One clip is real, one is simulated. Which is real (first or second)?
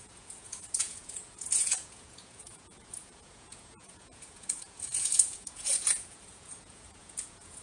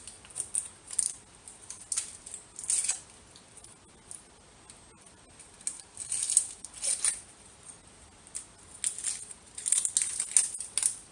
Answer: second